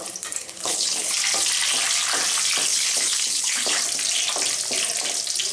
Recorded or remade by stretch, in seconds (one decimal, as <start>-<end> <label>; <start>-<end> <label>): 0.0-0.4 recorded; 0.4-1.1 remade; 1.1-2.7 recorded; 2.7-3.8 remade; 3.8-5.5 recorded